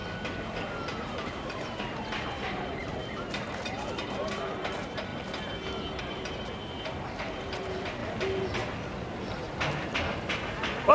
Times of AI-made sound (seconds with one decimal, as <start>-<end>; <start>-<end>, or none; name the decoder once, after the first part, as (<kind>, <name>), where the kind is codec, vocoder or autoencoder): 1.0-5.1 (vocoder, BigVGAN v2); 6.0-8.0